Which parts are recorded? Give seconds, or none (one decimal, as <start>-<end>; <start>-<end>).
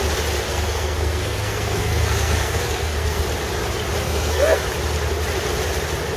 0.0-0.5; 3.2-4.0; 4.6-6.2